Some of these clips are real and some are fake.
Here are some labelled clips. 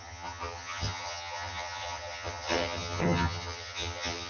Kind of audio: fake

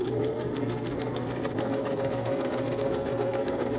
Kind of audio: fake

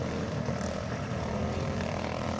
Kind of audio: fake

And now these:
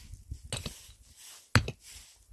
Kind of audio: real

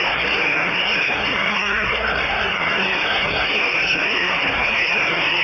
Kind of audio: fake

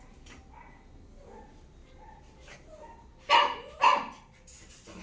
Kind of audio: real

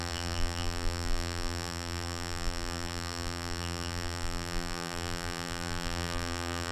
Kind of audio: fake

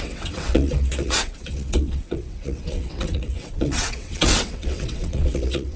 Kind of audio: fake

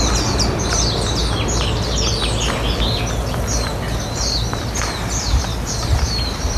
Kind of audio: real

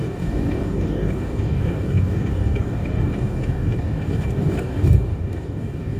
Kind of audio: fake